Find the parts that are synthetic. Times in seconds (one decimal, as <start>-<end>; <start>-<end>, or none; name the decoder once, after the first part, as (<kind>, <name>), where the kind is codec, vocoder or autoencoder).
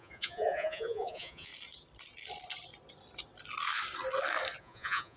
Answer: 0.0-1.5 (vocoder, Vocos); 4.6-5.2